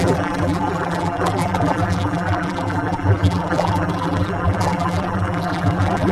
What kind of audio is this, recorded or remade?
remade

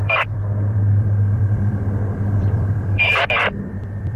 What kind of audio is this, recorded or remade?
remade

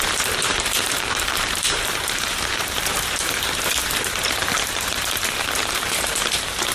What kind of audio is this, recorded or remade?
remade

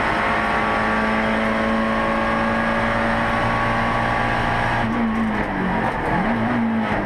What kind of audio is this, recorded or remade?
recorded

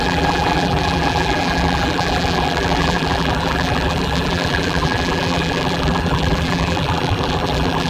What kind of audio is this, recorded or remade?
remade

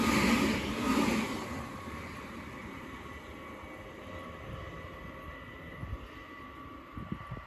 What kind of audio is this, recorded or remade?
recorded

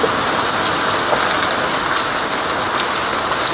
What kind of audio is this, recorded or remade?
recorded